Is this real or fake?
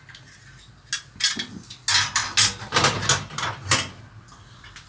real